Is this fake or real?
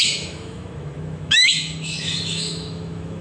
fake